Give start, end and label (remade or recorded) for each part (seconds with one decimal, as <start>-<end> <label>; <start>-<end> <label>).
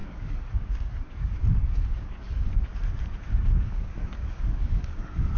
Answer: 0.0-2.7 remade; 2.7-3.6 recorded; 3.6-5.4 remade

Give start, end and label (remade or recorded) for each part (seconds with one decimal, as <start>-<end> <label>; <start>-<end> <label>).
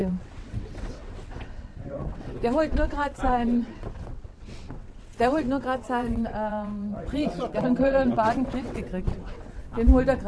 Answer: 0.0-9.6 remade; 9.6-10.3 recorded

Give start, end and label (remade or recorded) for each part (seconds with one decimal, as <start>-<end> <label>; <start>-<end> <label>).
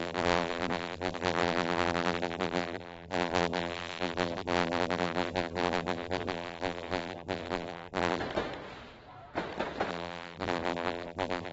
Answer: 0.0-8.2 remade; 8.2-9.9 recorded; 9.9-11.5 remade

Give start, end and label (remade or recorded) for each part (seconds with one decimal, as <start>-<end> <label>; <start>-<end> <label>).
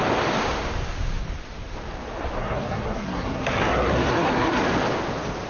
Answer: 0.0-2.4 recorded; 2.4-4.6 remade; 4.6-5.5 recorded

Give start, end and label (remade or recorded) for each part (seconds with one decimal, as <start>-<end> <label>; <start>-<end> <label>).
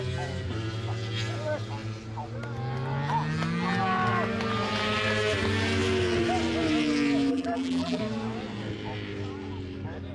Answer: 0.0-7.3 recorded; 7.3-8.0 remade; 8.0-10.1 recorded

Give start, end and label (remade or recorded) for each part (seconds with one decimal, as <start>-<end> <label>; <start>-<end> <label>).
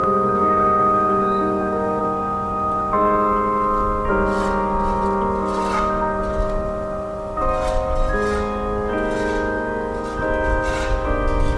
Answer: 0.0-2.0 remade; 2.0-11.6 recorded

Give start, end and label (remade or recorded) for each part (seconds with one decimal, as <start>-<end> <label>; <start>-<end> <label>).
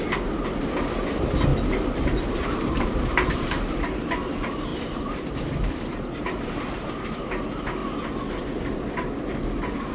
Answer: 0.0-1.5 recorded; 1.5-4.1 remade; 4.1-4.7 recorded; 4.7-7.2 remade; 7.2-9.9 recorded